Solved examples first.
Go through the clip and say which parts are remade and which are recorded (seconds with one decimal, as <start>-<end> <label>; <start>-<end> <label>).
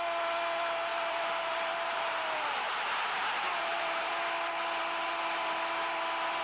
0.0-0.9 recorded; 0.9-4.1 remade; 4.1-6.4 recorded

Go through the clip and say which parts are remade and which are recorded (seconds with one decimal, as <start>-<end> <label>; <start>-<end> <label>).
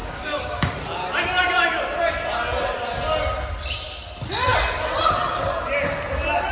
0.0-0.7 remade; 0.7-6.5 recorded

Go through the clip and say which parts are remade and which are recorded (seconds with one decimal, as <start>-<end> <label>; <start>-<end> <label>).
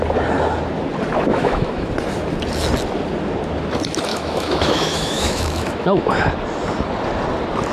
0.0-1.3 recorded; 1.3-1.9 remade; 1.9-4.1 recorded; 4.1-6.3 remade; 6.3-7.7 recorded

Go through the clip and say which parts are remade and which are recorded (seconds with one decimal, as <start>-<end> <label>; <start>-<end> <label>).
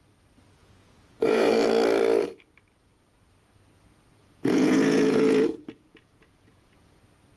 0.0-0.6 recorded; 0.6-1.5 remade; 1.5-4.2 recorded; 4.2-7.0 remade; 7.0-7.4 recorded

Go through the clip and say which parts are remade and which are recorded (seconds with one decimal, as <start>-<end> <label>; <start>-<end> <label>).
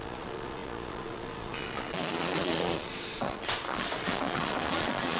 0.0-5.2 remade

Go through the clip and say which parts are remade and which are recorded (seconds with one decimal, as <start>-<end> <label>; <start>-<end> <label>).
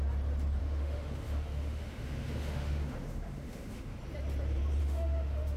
0.0-0.6 recorded; 0.6-4.0 remade; 4.0-4.8 recorded; 4.8-5.6 remade